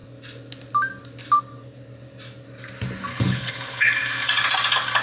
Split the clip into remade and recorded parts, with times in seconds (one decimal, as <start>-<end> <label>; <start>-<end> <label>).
0.0-3.1 recorded; 3.1-3.9 remade; 3.9-5.0 recorded